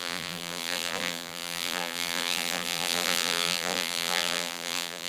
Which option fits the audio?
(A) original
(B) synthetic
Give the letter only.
B